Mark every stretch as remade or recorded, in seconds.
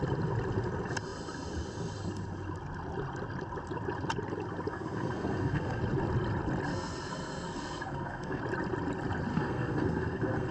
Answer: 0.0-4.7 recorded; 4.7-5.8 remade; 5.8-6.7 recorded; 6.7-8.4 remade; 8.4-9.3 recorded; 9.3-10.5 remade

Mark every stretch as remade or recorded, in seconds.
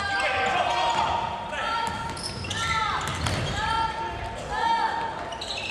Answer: 0.0-5.7 recorded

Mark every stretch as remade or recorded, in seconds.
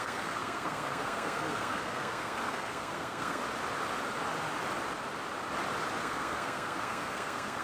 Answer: 0.0-3.4 remade; 3.4-6.0 recorded; 6.0-7.6 remade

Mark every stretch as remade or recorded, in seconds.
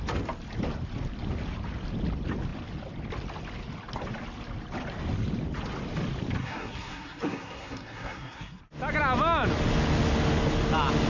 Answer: 0.0-6.4 recorded; 6.4-8.6 remade; 8.6-11.1 recorded